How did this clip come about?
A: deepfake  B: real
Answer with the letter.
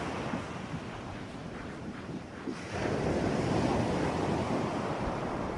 B